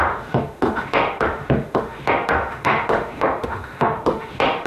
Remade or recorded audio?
remade